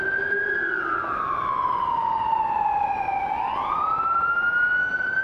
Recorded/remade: recorded